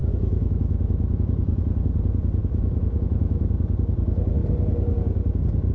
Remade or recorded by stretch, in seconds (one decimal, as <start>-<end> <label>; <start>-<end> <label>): 0.0-1.6 remade; 1.6-2.4 recorded; 2.4-3.5 remade; 3.5-5.7 recorded